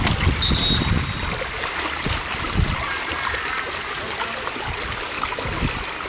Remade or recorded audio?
recorded